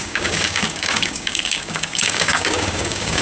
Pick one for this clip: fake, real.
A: fake